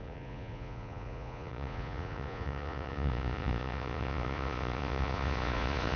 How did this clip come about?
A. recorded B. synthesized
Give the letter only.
B